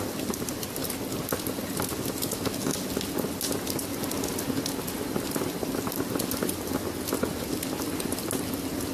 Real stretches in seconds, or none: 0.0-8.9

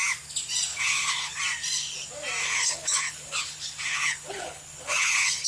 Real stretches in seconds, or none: 0.0-0.7; 1.4-2.4

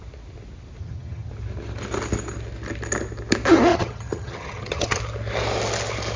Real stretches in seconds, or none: 0.0-0.8; 1.3-3.7; 5.0-6.2

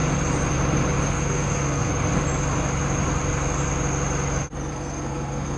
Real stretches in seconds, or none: 0.0-1.1; 1.9-4.7

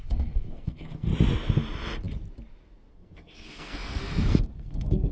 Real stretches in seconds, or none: 1.1-2.9

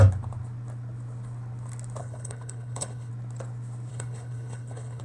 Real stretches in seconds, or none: 0.0-2.0; 3.1-3.9